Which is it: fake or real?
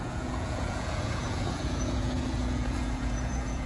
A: fake